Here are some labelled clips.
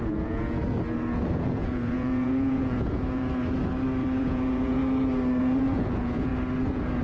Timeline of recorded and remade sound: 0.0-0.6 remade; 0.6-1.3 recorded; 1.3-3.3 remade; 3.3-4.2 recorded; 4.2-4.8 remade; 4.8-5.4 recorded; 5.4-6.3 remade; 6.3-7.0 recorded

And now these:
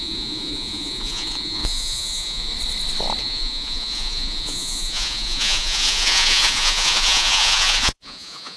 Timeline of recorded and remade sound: 0.0-2.5 remade; 2.5-3.2 recorded; 3.2-8.6 remade